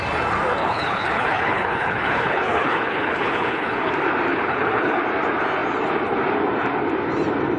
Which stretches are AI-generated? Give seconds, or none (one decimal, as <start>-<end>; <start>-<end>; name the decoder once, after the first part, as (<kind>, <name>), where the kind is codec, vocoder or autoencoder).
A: 0.6-3.9 (codec, HILCodec); 4.3-5.0